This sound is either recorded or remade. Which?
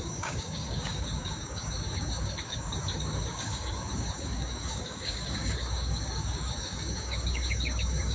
remade